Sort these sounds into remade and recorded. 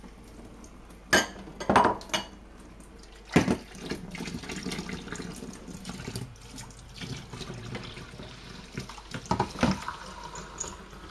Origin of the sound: recorded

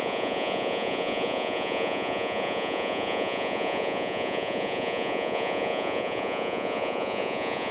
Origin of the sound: remade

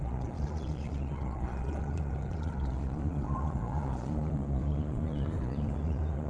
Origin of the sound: remade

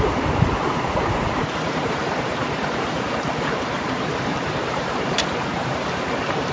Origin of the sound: remade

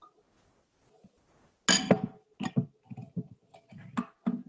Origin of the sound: recorded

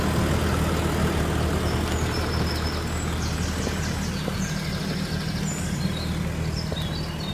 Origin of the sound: recorded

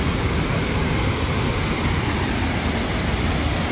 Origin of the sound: recorded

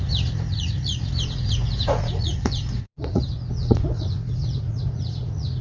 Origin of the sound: remade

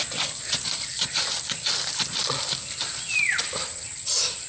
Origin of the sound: recorded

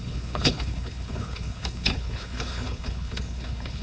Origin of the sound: remade